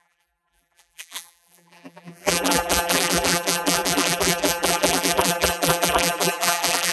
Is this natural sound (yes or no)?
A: no